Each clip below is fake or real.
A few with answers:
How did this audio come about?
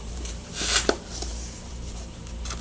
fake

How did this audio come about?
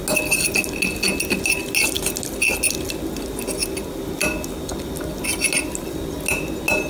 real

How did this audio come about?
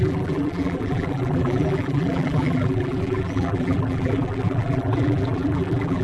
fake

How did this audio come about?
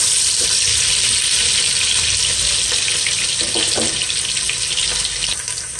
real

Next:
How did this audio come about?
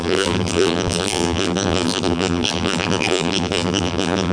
fake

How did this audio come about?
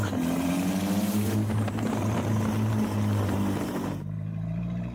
fake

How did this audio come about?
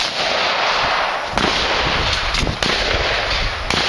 real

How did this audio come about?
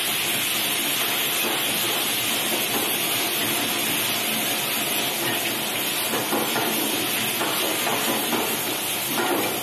real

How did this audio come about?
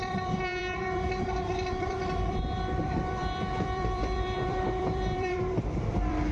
fake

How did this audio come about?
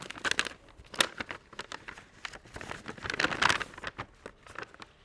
real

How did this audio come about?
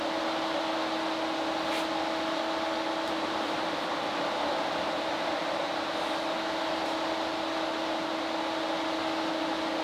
real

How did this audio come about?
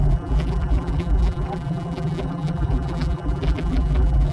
fake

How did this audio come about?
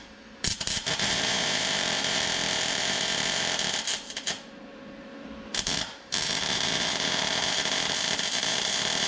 fake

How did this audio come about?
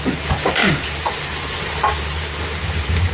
fake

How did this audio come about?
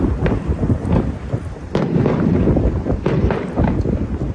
real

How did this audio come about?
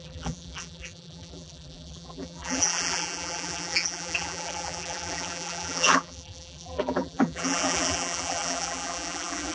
fake